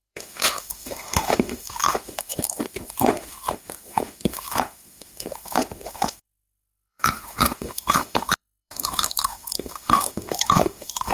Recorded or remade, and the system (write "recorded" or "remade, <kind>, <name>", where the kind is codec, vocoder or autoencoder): remade, autoencoder, DAC-VAE